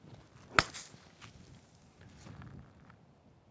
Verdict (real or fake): real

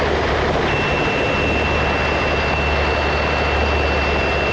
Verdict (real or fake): real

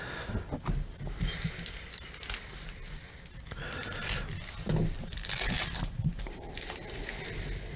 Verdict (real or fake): real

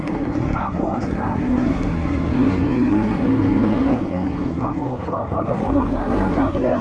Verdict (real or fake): fake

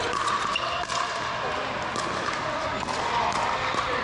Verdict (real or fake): real